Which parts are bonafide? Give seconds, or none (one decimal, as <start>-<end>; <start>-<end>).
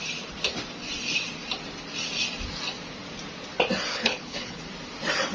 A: 0.0-3.9; 4.6-5.3